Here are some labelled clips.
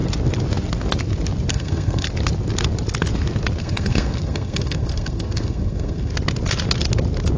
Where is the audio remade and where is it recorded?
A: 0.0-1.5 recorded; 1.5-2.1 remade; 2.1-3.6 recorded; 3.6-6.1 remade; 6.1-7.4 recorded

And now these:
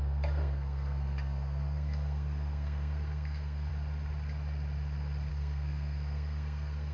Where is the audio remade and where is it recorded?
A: 0.0-3.7 remade; 3.7-5.3 recorded; 5.3-6.9 remade